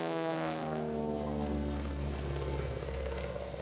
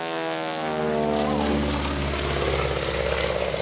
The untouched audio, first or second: second